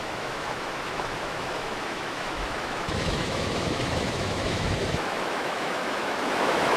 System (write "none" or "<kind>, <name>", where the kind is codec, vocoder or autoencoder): autoencoder, DAC-VAE